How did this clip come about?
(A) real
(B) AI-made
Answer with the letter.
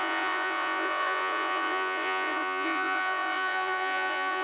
B